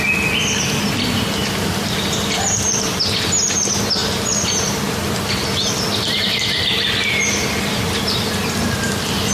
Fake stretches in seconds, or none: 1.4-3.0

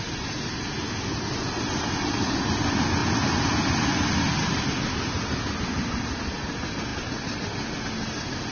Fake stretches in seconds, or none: none

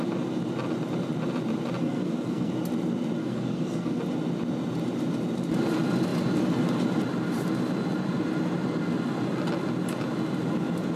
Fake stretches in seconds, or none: 1.8-2.5; 3.2-4.0

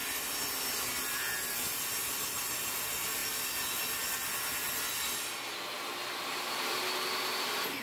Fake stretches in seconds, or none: 0.8-3.2

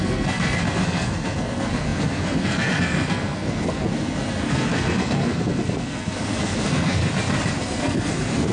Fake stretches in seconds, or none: 0.0-7.0; 7.6-8.5

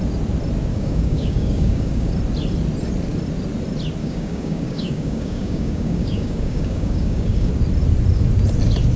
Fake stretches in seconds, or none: 0.7-2.1; 4.0-7.5